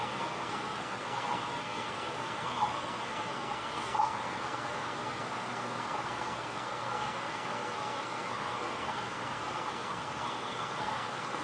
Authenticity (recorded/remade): remade